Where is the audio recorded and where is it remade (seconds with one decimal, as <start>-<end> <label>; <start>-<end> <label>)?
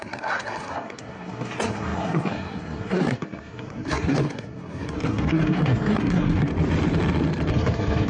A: 0.0-6.5 remade; 6.5-7.5 recorded; 7.5-8.1 remade